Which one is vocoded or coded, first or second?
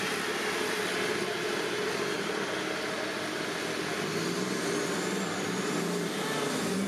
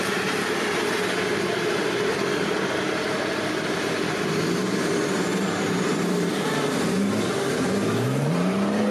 second